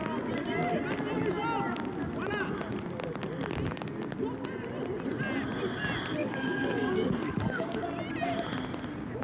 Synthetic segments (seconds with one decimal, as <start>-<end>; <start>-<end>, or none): 6.2-7.8